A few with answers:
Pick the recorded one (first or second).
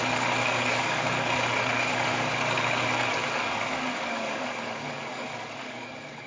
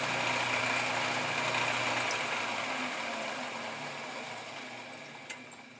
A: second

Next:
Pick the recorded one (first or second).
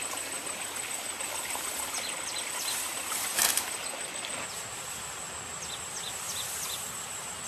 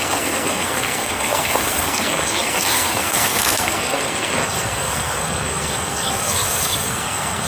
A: first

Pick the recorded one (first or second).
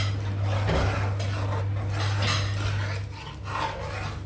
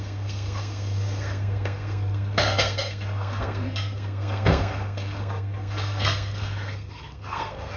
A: first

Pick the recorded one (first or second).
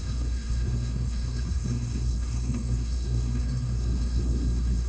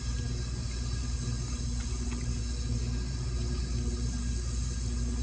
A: second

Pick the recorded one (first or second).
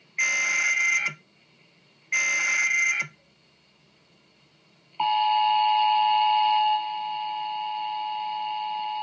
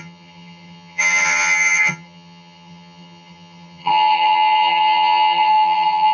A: first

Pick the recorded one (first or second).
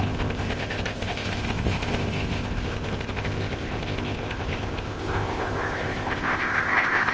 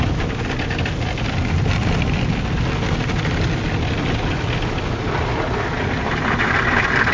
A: second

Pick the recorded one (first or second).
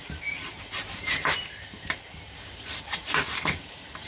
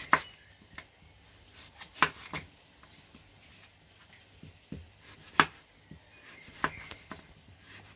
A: second